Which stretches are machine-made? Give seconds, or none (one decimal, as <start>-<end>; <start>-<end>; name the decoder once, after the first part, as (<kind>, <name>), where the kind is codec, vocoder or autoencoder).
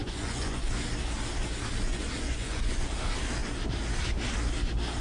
0.0-0.7 (vocoder, Vocos); 1.9-2.9